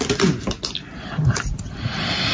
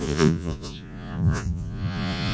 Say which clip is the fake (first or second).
second